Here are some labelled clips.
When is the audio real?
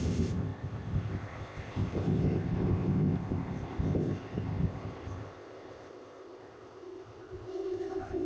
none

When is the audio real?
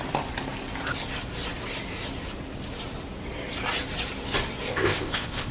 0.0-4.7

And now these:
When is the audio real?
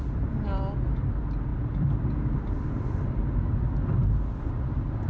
0.0-5.1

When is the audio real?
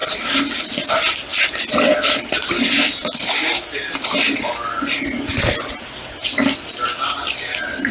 0.0-7.9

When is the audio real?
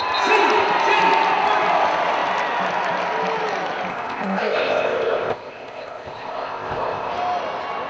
0.0-3.9; 7.1-7.9